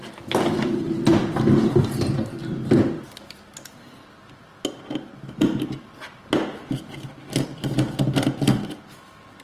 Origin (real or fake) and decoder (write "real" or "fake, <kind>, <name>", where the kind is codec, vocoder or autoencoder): real